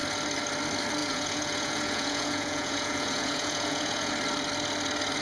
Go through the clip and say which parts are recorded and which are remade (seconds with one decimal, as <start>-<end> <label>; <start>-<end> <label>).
0.0-1.0 recorded; 1.0-4.1 remade; 4.1-5.2 recorded